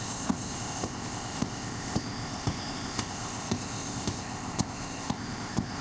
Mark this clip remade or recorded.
remade